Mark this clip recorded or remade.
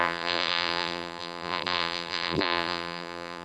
remade